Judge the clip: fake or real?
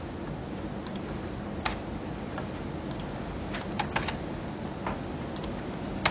real